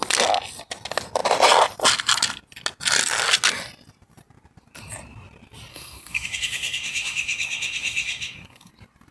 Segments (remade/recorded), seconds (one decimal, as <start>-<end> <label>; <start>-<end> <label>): 0.0-5.7 recorded; 5.7-8.7 remade; 8.7-9.1 recorded